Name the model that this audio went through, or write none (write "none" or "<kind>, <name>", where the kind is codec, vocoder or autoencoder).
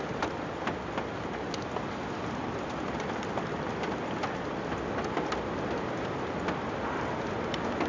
none